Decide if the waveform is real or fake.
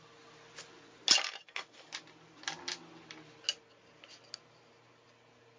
real